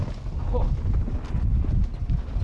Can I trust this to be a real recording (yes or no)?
yes